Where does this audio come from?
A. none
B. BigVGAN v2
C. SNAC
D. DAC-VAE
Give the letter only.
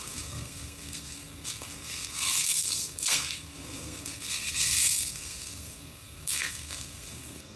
C